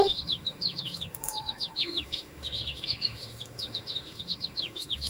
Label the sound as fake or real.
fake